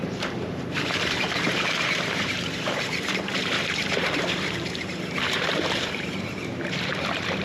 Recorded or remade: remade